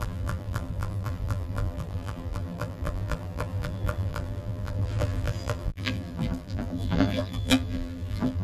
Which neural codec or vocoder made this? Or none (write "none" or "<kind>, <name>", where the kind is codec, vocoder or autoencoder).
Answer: vocoder, BigVGAN v2